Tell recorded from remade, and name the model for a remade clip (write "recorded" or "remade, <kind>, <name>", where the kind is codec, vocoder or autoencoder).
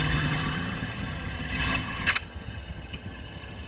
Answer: remade, vocoder, HiFi-GAN